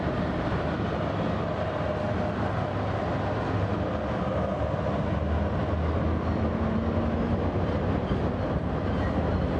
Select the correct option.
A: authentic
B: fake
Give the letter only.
A